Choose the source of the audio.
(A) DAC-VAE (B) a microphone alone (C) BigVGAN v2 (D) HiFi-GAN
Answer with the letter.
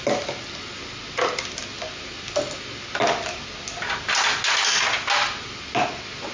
B